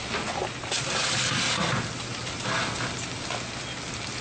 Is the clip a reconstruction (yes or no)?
no